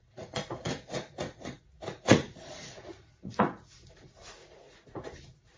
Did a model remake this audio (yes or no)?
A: yes